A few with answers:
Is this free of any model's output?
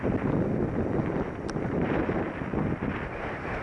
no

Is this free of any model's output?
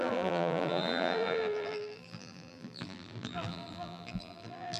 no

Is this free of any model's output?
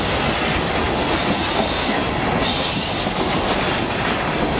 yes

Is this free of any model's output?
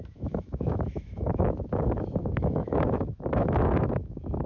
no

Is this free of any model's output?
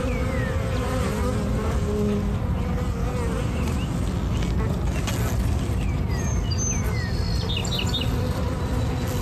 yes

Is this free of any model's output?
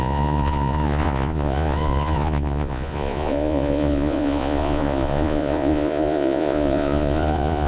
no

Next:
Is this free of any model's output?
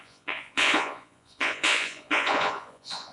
no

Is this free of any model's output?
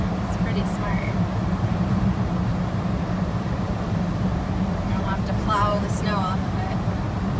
no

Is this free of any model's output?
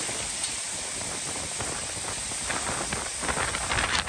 yes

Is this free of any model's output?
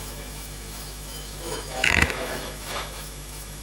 no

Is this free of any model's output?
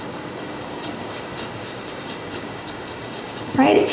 no